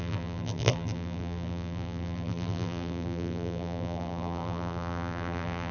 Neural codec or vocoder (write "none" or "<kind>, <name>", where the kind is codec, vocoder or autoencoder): vocoder, BigVGAN v2